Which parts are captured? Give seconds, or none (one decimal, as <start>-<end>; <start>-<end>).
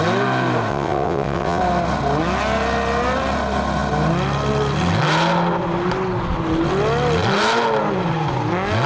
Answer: 0.0-0.7; 1.6-8.9